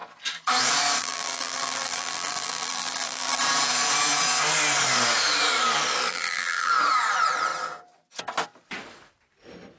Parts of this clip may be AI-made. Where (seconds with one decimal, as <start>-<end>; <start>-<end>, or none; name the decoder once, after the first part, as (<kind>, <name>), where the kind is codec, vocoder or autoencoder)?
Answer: 1.0-3.4 (vocoder, BigVGAN v2); 6.1-6.7